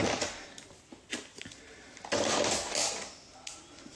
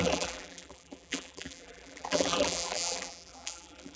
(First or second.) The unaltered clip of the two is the first